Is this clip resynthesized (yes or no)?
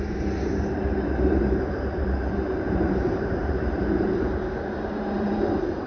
yes